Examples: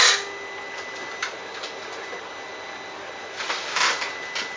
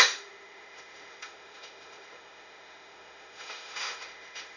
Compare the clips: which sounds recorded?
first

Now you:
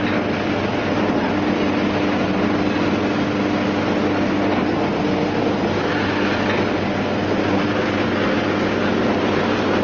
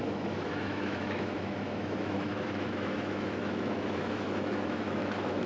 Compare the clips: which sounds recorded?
first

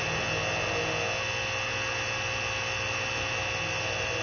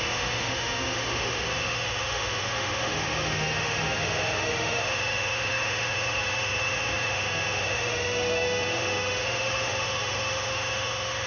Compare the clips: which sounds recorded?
first